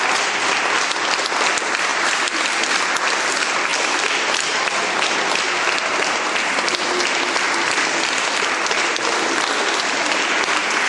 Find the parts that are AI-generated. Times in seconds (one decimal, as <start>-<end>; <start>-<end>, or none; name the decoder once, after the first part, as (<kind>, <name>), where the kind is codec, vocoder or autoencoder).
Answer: none